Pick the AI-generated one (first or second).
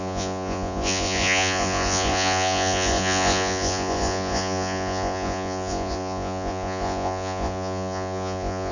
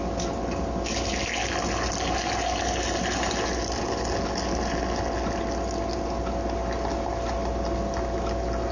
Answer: first